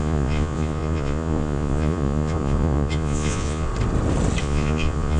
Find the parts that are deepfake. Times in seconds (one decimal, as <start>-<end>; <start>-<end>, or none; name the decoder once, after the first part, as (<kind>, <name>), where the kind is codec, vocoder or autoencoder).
0.0-3.7 (vocoder, Vocos); 4.4-5.2